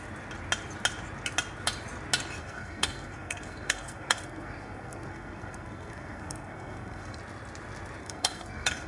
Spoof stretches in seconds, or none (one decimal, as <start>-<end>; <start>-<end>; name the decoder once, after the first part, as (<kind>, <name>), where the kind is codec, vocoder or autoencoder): 2.4-7.2 (codec, SNAC); 8.0-8.9